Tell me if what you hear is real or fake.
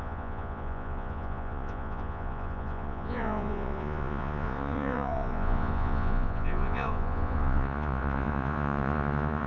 fake